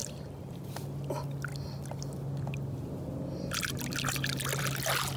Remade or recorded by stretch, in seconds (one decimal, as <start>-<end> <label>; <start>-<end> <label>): 0.0-0.6 remade; 0.6-5.2 recorded